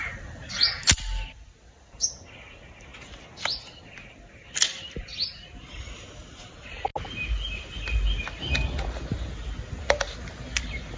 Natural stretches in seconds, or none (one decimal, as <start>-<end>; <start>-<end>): 0.0-11.0